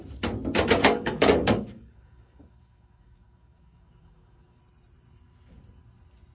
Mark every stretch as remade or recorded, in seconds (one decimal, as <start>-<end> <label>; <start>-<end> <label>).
0.0-0.8 recorded; 0.8-4.6 remade; 4.6-6.3 recorded